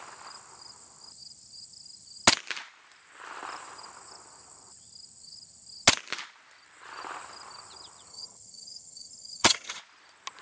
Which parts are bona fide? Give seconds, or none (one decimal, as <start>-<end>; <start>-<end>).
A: 0.0-8.1; 9.8-10.4